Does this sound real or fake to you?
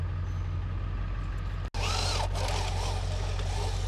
real